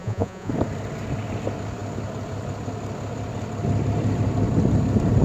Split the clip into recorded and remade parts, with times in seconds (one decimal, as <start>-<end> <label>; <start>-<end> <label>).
0.0-0.5 remade; 0.5-5.2 recorded